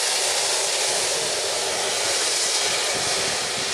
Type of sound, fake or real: real